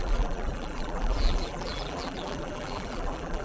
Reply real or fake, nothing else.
fake